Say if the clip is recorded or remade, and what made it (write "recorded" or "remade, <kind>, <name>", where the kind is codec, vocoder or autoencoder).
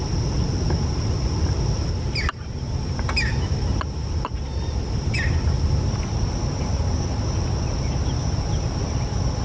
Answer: recorded